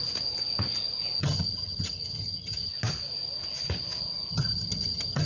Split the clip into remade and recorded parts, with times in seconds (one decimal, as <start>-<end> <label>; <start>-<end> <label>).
0.0-1.2 recorded; 1.2-2.7 remade; 2.7-4.3 recorded; 4.3-5.3 remade